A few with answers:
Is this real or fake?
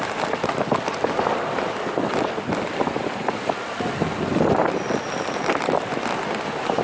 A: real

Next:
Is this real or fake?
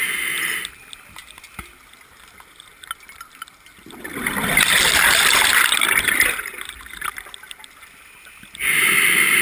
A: real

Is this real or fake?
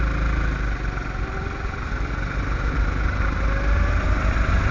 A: real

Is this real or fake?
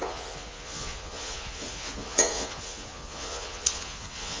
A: fake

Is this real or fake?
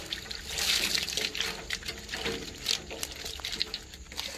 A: real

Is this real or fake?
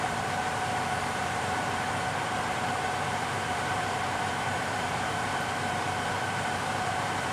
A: fake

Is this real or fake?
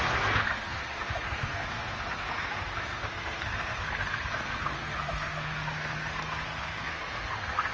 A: fake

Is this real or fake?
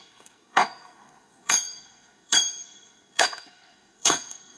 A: fake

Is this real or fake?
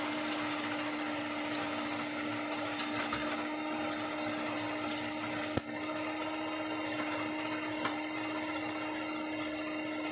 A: real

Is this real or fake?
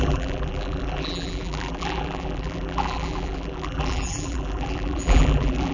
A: fake